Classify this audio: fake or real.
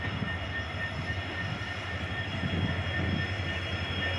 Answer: real